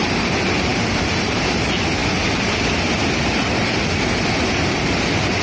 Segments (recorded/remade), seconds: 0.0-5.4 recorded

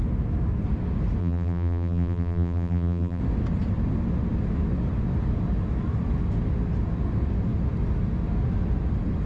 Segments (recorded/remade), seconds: 0.0-1.2 recorded; 1.2-3.2 remade; 3.2-9.3 recorded